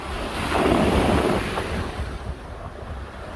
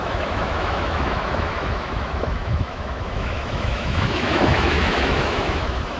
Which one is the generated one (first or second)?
second